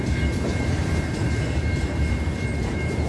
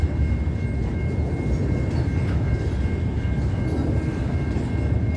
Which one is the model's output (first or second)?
first